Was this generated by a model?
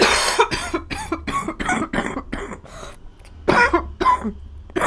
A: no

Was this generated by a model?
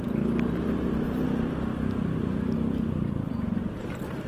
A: no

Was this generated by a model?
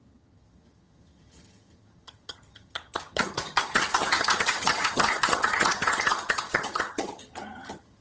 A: yes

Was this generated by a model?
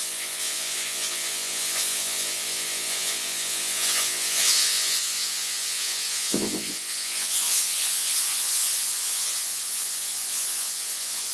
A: yes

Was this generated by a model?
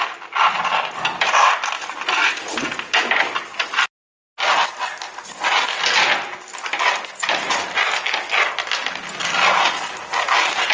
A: no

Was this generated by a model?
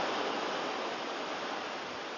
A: no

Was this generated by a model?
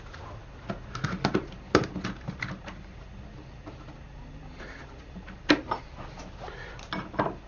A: no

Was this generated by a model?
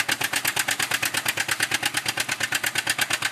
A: no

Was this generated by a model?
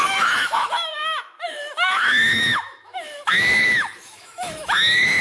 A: yes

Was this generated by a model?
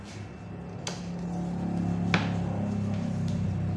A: no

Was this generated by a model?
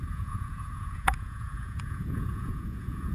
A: yes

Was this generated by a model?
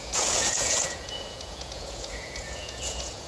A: yes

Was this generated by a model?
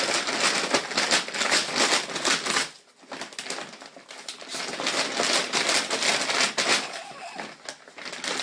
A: no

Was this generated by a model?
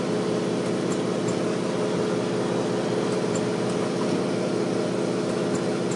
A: no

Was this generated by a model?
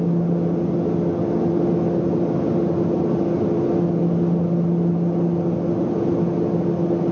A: no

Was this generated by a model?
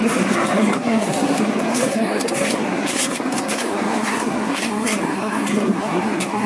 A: yes